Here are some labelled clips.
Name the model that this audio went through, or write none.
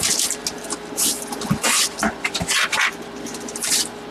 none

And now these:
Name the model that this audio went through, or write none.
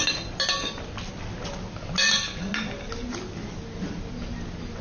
none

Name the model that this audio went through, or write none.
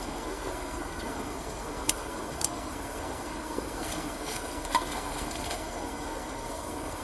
codec, SNAC